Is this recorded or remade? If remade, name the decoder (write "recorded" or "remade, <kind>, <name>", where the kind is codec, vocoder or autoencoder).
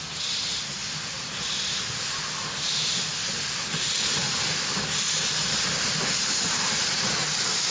recorded